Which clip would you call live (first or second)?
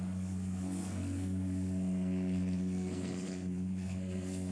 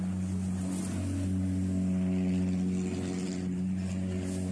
second